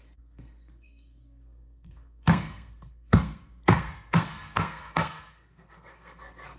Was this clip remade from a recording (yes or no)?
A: yes